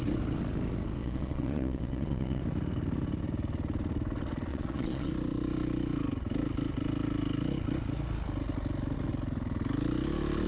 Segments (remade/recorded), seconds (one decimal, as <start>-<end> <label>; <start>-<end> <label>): 0.0-1.0 recorded; 1.0-2.4 remade; 2.4-4.5 recorded; 4.5-5.1 remade; 5.1-10.5 recorded